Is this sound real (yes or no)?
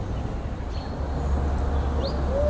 yes